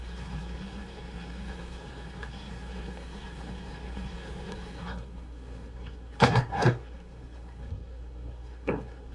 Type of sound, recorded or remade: remade